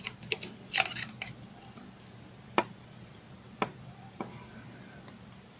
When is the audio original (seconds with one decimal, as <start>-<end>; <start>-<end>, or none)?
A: 0.0-5.6